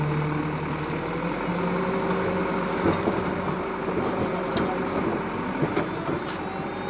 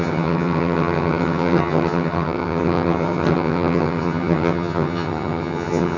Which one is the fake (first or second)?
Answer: second